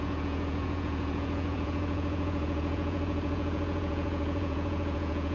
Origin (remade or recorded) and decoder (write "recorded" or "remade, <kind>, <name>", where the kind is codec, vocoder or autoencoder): remade, vocoder, Vocos